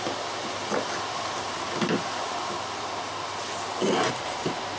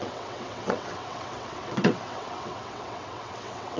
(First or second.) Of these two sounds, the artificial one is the second